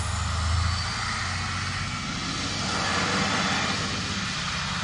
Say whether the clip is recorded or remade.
recorded